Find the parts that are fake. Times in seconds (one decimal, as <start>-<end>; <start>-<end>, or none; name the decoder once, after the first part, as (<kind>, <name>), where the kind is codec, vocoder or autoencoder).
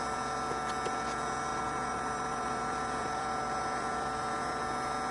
1.5-4.6 (vocoder, BigVGAN v2)